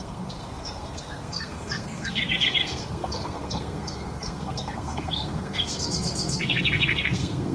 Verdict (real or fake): fake